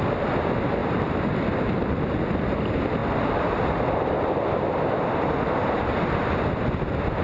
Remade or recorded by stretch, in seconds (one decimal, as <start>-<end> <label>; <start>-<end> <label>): 0.0-7.2 recorded